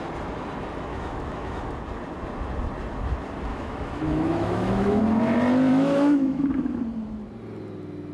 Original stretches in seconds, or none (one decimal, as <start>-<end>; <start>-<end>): 0.0-0.9; 1.6-3.5; 5.0-5.7; 6.6-8.1